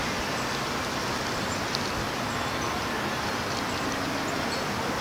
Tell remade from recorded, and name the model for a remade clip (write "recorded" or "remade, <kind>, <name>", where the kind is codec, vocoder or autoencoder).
recorded